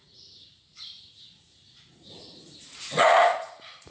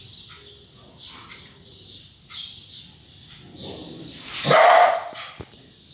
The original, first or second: second